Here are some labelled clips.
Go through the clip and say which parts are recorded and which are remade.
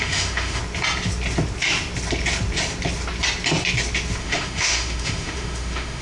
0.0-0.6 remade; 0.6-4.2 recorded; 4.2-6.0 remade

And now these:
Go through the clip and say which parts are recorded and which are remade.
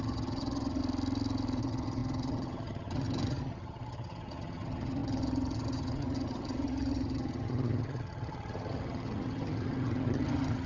0.0-0.8 remade; 0.8-1.6 recorded; 1.6-10.7 remade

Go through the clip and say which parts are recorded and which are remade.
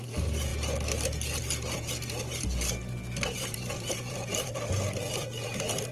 0.0-5.9 recorded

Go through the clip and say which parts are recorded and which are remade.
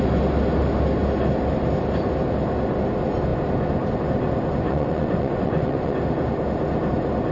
0.0-4.7 recorded; 4.7-6.0 remade; 6.0-7.3 recorded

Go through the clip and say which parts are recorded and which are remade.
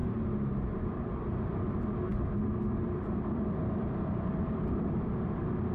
0.0-2.1 recorded; 2.1-5.7 remade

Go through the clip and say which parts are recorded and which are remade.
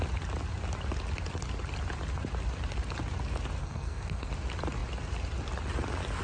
0.0-3.6 recorded; 3.6-4.3 remade; 4.3-6.2 recorded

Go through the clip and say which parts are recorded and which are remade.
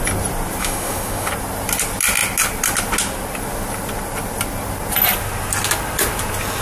0.0-0.6 recorded; 0.6-1.3 remade; 1.3-6.6 recorded